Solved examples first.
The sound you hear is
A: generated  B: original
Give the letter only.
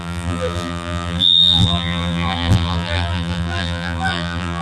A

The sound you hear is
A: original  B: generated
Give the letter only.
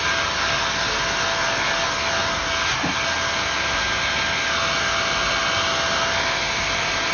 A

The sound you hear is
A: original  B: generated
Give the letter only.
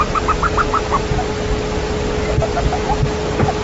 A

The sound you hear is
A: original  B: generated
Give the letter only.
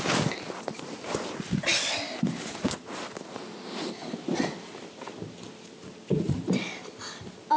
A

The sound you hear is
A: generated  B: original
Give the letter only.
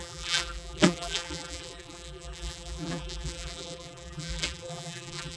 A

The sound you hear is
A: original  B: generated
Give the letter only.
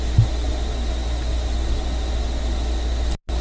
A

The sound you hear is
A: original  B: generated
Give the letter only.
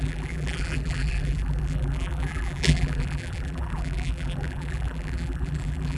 B